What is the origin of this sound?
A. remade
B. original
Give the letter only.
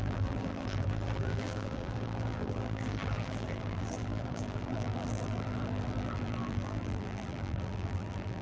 A